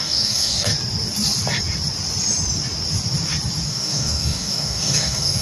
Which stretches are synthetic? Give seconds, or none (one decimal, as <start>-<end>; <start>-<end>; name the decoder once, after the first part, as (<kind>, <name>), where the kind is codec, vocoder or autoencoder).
0.0-0.7 (codec, DAC); 3.7-5.4